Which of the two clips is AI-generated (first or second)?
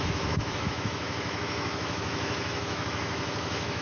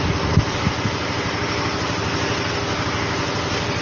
first